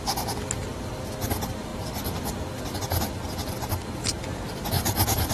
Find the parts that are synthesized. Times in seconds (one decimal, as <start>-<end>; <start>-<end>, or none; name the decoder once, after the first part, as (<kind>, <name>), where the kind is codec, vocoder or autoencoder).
none